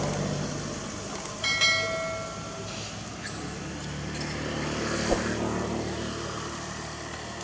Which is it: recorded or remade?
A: recorded